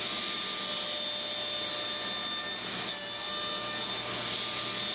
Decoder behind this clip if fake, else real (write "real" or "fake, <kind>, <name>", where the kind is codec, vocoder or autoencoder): real